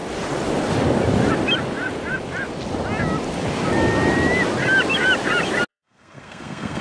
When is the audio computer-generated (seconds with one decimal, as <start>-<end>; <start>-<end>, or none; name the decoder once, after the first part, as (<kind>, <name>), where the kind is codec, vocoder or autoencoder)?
5.7-6.8 (codec, SNAC)